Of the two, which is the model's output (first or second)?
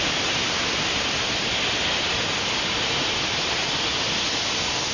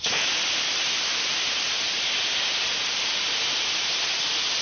second